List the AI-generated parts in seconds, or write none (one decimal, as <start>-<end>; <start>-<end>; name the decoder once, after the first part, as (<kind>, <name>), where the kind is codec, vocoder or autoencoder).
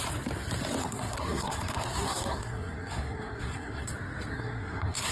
0.8-3.9 (codec, SNAC); 4.3-5.1